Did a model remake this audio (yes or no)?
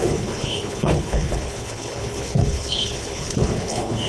yes